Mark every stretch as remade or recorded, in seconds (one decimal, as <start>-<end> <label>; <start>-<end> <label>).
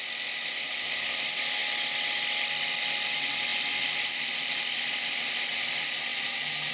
0.0-6.1 recorded; 6.1-6.7 remade